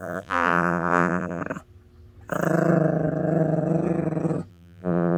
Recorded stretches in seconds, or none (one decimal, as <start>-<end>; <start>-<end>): 1.4-4.5

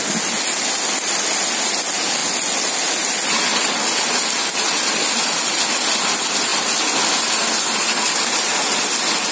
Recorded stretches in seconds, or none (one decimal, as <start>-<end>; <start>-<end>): 0.0-9.3

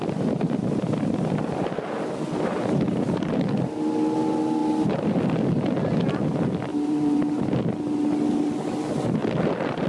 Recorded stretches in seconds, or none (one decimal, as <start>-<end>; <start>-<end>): 0.0-4.6; 5.1-6.7; 7.2-9.9

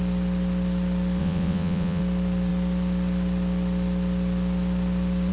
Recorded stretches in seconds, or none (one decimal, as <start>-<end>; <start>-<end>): 0.0-1.2; 2.0-5.3

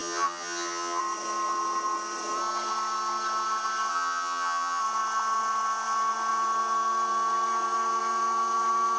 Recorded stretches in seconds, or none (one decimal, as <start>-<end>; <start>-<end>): 1.0-3.9; 4.8-9.0

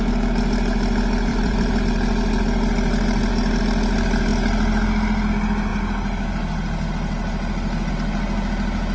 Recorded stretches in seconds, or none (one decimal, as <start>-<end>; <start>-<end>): 0.0-1.3; 1.8-8.9

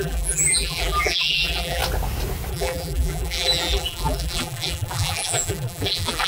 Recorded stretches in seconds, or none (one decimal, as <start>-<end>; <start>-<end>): 1.8-2.5

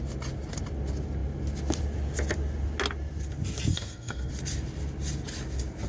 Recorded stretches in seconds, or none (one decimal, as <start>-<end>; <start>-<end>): 0.0-3.7; 4.3-5.9